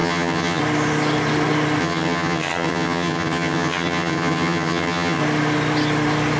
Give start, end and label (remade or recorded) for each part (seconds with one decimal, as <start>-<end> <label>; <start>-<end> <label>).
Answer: 0.0-0.6 remade; 0.6-1.8 recorded; 1.8-5.2 remade; 5.2-6.4 recorded

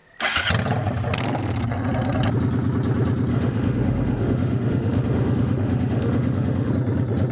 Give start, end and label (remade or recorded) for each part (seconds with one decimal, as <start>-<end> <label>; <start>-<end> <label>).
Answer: 0.0-3.3 recorded; 3.3-6.7 remade; 6.7-7.3 recorded

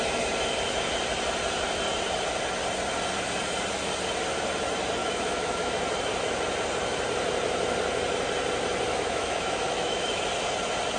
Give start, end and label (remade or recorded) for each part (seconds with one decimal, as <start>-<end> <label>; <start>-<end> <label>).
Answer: 0.0-5.0 recorded; 5.0-5.7 remade; 5.7-8.9 recorded; 8.9-10.2 remade; 10.2-11.0 recorded

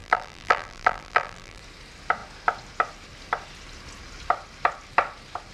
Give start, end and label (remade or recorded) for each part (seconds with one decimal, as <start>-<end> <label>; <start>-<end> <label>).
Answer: 0.0-1.6 remade; 1.6-5.5 recorded